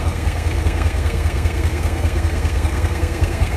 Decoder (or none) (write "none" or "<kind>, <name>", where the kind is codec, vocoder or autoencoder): codec, SNAC